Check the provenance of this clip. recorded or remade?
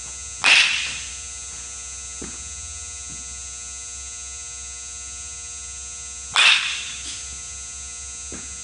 recorded